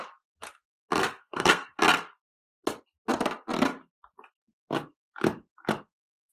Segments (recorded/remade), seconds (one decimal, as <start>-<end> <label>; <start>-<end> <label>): 0.0-1.0 recorded; 1.0-1.8 remade; 1.8-6.3 recorded